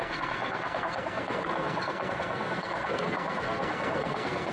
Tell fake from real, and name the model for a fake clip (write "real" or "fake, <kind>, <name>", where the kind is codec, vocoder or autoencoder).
fake, codec, SNAC